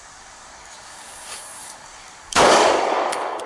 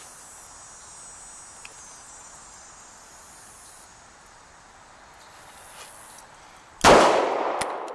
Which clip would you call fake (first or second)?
first